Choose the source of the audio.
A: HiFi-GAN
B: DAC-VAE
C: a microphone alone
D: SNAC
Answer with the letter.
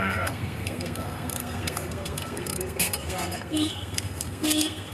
D